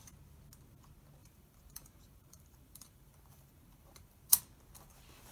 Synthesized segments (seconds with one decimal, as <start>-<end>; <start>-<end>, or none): 1.2-4.4

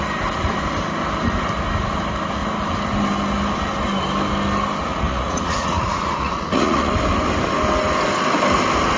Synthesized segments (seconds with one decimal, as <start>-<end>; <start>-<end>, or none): 4.8-6.9